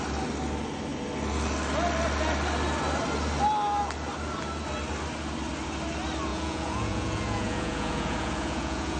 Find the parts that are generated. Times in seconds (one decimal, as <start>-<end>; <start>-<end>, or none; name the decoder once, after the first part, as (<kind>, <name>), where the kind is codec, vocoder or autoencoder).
6.3-9.0 (vocoder, Vocos)